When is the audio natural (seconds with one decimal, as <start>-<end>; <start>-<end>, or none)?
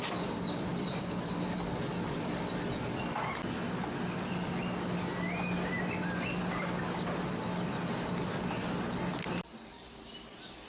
0.0-0.7; 1.3-9.7